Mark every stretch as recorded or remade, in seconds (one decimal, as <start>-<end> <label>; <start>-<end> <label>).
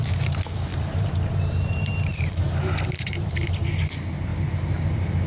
0.0-0.7 recorded; 0.7-3.9 remade; 3.9-5.3 recorded